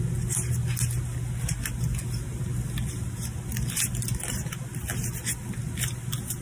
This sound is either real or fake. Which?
real